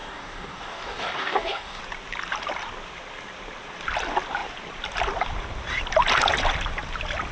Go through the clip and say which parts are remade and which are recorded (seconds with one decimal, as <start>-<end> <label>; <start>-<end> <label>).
0.0-1.8 remade; 1.8-7.3 recorded